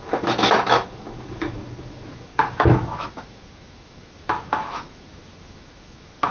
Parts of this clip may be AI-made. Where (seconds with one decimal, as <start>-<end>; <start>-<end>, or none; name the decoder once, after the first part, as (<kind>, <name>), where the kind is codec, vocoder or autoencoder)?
0.0-6.3 (autoencoder, DAC-VAE)